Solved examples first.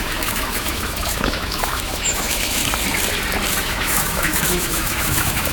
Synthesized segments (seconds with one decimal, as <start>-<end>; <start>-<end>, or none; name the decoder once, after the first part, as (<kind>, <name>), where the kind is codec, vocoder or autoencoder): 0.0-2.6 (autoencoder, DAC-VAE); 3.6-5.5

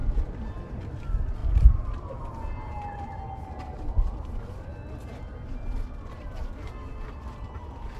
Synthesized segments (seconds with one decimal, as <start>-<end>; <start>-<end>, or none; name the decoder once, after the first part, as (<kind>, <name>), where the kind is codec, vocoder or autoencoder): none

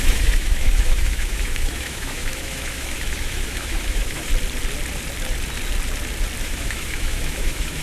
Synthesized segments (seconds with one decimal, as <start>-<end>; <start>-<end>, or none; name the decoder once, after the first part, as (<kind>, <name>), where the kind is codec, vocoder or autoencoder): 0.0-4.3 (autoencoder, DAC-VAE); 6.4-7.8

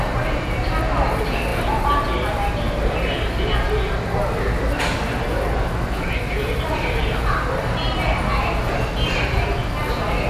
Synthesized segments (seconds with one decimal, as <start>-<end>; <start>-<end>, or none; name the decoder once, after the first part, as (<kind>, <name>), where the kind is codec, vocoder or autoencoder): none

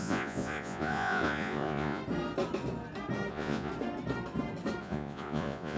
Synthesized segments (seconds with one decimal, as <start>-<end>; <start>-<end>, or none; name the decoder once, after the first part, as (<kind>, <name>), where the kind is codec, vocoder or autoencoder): 0.0-2.0 (vocoder, Vocos); 3.3-3.7; 4.8-5.8

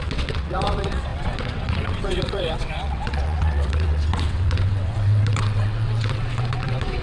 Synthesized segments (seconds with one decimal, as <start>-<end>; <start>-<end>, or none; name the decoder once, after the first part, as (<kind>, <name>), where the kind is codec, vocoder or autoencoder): 0.0-7.0 (vocoder, WaveNeXt)

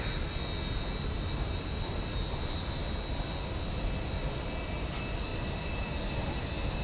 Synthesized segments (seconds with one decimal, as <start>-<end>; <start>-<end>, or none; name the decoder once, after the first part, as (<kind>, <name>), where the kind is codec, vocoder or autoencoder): none

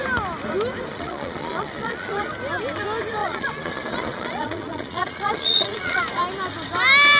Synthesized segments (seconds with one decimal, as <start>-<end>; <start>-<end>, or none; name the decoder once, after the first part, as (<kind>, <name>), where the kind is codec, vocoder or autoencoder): 0.9-2.3 (vocoder, Vocos); 3.2-6.0